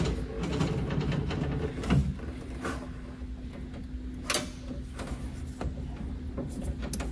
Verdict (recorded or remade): recorded